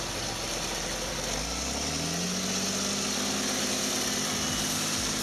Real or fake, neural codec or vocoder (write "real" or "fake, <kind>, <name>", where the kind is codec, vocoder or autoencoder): real